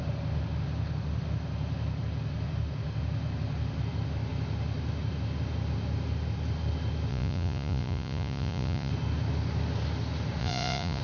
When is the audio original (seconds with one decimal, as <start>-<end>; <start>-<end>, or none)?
0.0-7.1; 8.9-10.4